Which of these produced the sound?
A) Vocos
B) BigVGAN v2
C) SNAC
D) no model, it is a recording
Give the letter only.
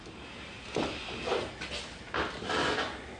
D